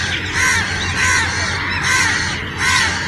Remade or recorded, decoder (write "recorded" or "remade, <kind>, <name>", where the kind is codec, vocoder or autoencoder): recorded